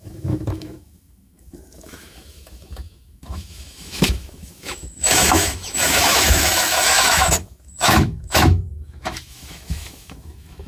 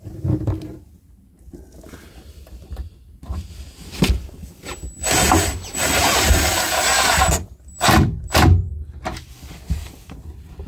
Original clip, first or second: second